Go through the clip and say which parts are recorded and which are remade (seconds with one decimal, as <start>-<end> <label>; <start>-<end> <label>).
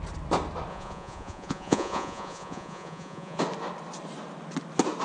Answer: 0.0-0.7 recorded; 0.7-3.4 remade; 3.4-5.0 recorded